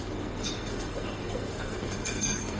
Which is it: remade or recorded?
remade